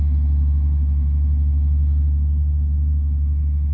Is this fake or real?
real